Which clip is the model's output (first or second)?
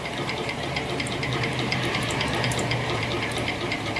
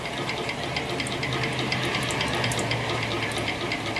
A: first